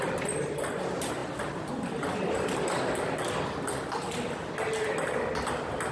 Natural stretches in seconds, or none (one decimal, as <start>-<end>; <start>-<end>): 0.0-5.9